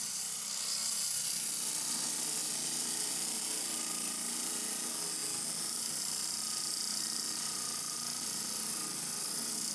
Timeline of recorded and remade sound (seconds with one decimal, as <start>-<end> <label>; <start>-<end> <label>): 0.0-9.7 recorded